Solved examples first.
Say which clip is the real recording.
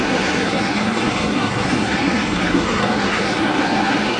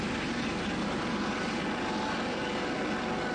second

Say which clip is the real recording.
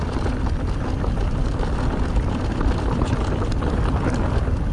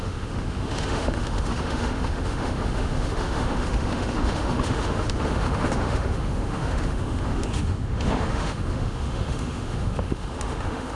first